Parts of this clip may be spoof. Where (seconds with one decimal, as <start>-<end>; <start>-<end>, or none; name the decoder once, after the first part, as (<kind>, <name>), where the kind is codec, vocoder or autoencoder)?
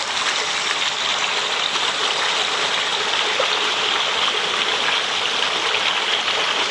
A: none